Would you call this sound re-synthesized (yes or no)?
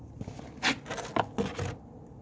no